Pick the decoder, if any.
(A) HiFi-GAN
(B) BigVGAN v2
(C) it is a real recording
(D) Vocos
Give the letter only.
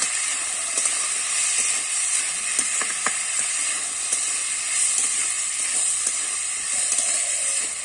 C